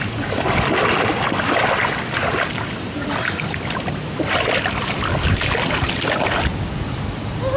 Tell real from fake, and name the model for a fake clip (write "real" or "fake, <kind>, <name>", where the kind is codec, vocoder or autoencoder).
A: real